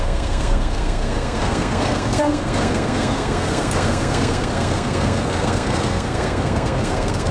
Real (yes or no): no